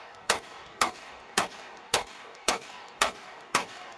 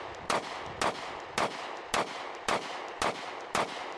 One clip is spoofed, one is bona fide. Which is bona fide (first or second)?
second